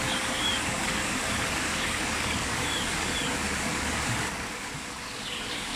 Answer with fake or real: fake